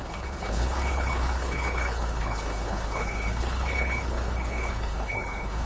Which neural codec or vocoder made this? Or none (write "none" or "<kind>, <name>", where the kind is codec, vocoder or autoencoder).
codec, HILCodec